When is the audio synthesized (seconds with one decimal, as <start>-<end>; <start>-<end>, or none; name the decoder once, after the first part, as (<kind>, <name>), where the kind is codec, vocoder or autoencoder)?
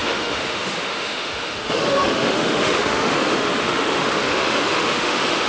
0.0-5.5 (autoencoder, DAC-VAE)